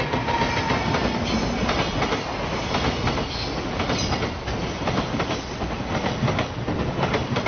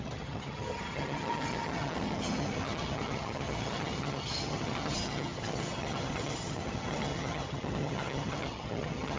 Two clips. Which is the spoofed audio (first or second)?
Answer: second